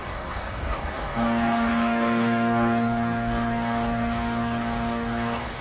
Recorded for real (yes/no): no